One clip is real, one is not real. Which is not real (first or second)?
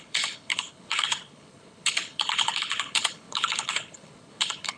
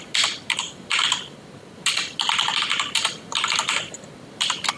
first